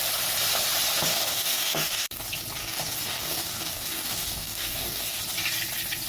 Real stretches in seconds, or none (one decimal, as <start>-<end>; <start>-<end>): 0.0-1.1; 2.2-2.6; 5.2-6.1